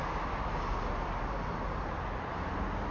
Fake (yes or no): no